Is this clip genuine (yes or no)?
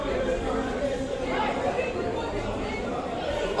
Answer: no